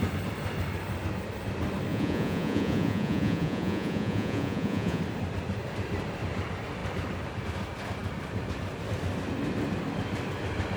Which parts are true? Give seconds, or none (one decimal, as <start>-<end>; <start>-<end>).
0.0-1.9; 5.0-10.8